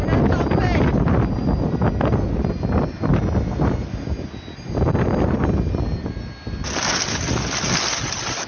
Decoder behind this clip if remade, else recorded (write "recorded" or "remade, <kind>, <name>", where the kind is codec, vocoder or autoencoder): recorded